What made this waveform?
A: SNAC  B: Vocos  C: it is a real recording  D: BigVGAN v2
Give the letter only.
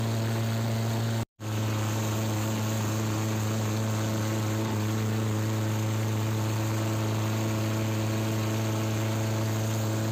D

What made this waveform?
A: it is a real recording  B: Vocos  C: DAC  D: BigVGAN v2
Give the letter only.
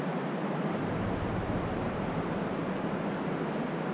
A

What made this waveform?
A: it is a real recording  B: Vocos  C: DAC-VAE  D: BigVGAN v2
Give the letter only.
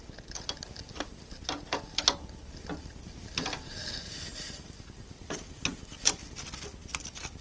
A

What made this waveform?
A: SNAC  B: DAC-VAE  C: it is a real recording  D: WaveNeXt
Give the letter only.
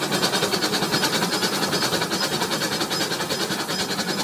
C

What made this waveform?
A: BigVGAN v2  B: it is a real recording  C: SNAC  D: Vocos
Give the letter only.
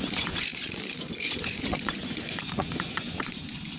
D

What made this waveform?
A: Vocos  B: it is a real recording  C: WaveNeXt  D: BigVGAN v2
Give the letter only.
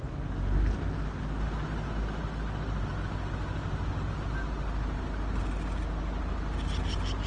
B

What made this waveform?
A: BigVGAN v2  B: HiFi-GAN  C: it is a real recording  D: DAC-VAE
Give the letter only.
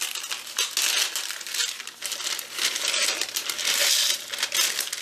C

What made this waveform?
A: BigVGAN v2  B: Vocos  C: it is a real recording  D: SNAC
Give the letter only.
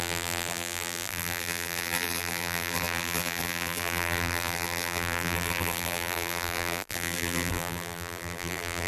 A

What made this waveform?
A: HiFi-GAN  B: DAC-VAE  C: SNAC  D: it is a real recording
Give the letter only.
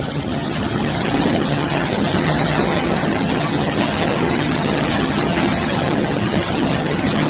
A